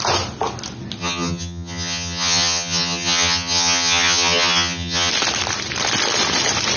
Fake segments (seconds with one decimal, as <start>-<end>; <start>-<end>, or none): 1.0-5.1